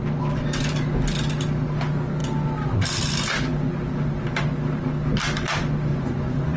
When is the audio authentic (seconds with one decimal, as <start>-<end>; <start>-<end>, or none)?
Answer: 0.0-5.9

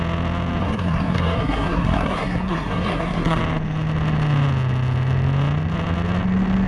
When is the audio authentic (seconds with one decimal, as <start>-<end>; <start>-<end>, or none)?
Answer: 0.0-0.6; 3.4-6.7

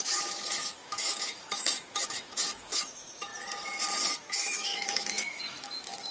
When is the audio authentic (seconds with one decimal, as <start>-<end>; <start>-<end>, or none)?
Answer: 3.3-4.1